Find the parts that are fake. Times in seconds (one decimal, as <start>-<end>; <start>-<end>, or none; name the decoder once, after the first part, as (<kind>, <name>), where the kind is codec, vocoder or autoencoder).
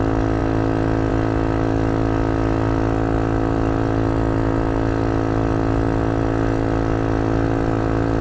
none